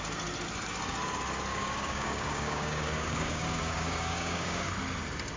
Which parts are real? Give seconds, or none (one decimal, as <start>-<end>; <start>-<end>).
0.0-1.5; 4.7-5.4